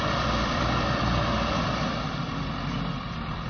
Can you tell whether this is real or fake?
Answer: fake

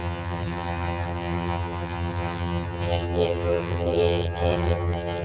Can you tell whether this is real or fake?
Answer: fake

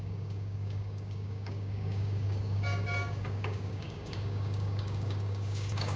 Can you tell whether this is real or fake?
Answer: fake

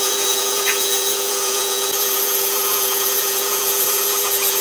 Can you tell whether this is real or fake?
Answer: fake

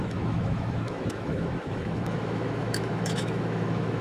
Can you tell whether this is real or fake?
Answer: fake